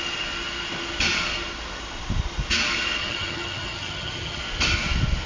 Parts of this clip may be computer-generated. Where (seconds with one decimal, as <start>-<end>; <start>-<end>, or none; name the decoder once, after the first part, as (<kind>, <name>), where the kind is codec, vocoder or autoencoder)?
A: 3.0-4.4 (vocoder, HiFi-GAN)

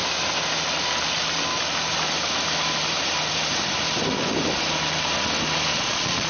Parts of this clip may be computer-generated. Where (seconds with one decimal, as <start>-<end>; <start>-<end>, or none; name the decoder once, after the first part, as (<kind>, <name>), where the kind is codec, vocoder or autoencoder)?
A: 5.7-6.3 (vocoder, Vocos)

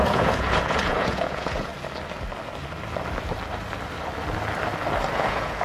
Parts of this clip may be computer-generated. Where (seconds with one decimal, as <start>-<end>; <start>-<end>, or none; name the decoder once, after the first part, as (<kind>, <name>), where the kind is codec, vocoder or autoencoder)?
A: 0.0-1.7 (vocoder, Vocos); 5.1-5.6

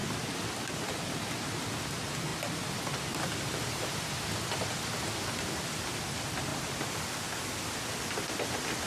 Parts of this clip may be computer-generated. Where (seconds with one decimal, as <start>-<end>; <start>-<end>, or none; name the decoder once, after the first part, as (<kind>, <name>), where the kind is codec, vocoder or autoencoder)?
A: 0.0-1.4 (vocoder, BigVGAN v2); 2.3-5.8; 6.5-7.2

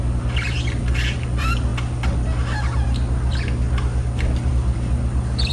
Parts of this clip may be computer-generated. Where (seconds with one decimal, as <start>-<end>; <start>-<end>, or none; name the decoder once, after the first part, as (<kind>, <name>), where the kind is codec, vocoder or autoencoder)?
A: 0.0-1.7 (vocoder, BigVGAN v2); 4.5-5.5

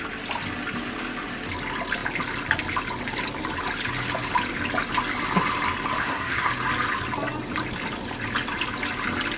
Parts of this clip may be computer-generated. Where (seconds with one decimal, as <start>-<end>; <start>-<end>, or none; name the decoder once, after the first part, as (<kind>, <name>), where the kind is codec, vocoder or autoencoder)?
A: 6.0-6.5 (codec, SNAC)